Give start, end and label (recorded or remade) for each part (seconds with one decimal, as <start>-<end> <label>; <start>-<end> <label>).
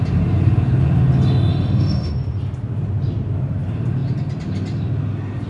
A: 0.0-1.5 recorded; 1.5-2.1 remade; 2.1-5.5 recorded